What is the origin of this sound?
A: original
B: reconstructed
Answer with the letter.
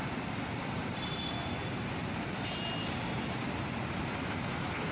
B